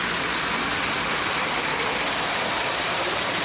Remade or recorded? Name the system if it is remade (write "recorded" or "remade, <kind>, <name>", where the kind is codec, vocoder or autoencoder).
recorded